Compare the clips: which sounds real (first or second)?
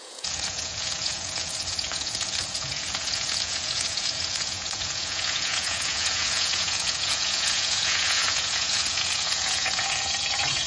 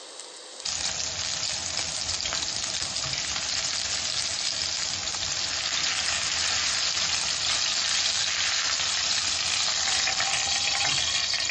second